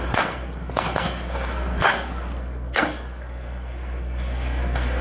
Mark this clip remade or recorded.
remade